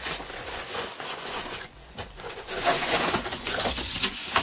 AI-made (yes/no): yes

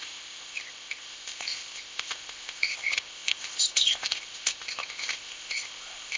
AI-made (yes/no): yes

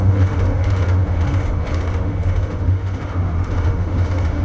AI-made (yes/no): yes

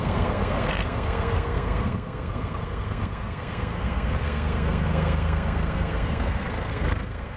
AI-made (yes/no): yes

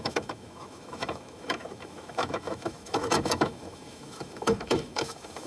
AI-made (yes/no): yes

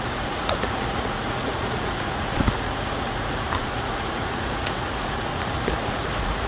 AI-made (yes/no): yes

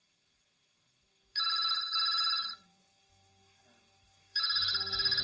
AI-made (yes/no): yes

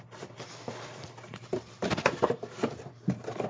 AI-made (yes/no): no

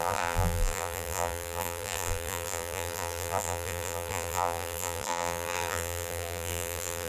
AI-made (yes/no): yes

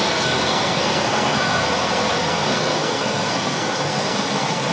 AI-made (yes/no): yes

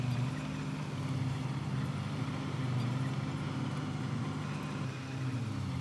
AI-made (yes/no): no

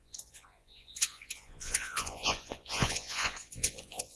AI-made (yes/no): yes